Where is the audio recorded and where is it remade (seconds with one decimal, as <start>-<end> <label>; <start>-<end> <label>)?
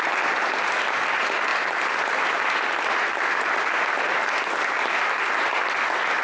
0.0-6.2 recorded